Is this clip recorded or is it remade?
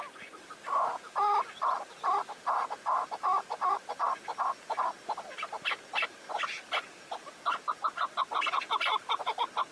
recorded